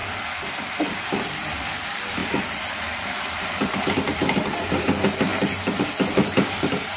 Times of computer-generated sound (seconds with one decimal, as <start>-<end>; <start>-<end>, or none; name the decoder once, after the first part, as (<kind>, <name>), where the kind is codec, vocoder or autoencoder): 0.9-2.2 (vocoder, BigVGAN v2); 3.0-5.3; 6.1-7.0